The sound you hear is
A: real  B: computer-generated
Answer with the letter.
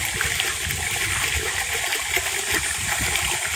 B